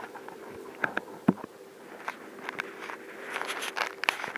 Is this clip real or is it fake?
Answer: real